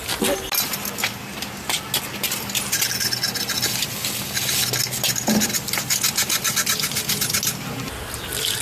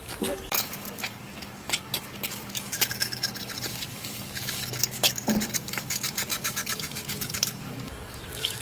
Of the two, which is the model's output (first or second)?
second